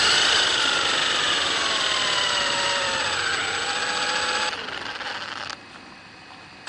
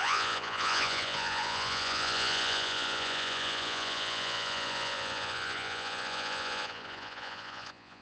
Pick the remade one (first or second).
second